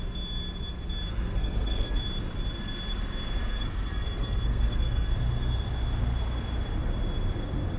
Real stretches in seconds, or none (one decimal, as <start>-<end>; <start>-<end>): 0.0-1.1; 2.0-3.5; 5.1-7.8